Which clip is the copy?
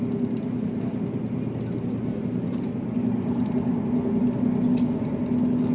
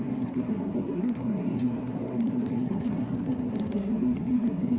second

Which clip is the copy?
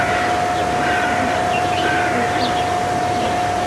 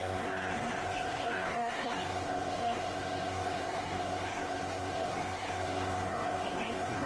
second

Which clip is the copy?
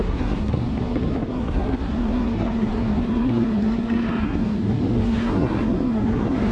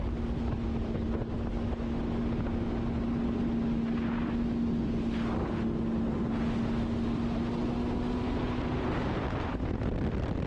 first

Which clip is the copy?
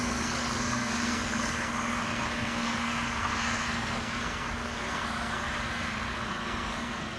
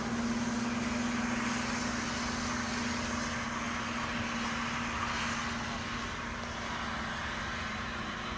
first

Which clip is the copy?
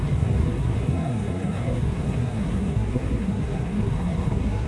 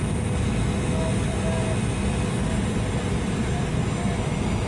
first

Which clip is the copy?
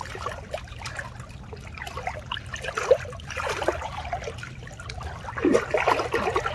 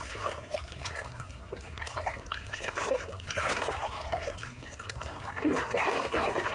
second